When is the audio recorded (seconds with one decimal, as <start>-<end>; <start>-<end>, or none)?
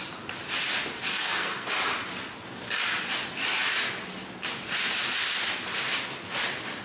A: 0.0-1.1; 1.7-6.8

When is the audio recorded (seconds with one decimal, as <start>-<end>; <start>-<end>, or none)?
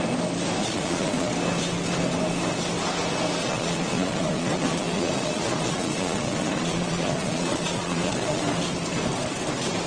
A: 0.0-0.6; 1.3-3.4; 8.4-9.9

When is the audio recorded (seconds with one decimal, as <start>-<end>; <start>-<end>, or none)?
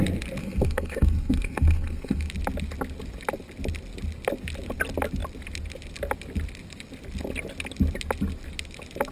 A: 0.0-0.4; 2.3-9.1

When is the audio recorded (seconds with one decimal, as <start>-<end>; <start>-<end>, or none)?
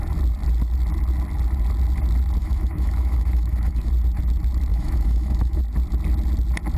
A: 0.0-2.4; 3.9-4.7; 5.6-6.8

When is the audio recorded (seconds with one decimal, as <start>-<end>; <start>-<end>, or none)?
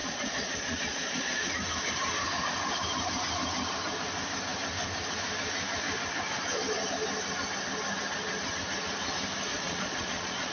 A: 1.5-9.5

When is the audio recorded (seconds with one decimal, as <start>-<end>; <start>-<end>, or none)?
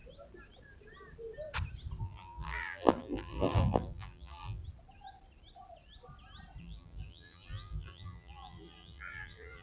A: 0.0-2.0; 4.6-6.6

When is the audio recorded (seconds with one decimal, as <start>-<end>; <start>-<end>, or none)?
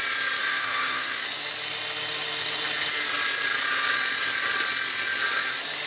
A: 0.0-0.4; 1.2-5.9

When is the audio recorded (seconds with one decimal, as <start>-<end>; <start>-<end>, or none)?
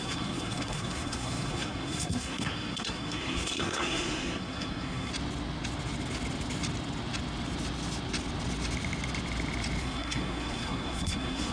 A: 5.1-9.8